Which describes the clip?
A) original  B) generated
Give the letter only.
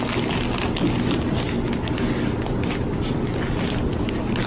A